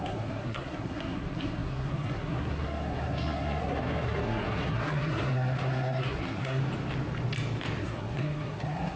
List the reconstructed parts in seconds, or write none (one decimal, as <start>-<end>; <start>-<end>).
0.0-6.6; 7.8-9.0